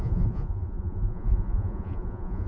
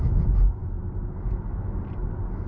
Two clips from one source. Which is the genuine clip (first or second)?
second